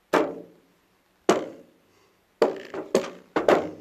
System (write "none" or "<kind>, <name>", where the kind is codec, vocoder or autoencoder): none